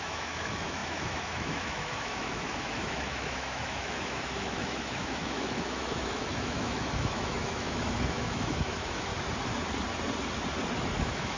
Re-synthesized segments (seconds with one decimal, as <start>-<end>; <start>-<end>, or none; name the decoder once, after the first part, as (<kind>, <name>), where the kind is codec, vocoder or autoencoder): 0.0-9.1 (autoencoder, DAC-VAE); 11.0-11.4